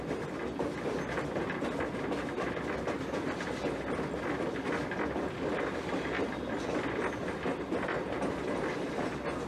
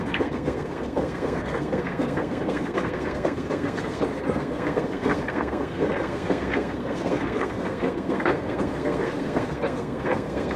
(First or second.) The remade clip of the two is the second